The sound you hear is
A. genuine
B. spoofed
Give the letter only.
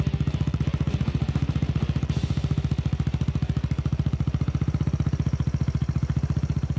A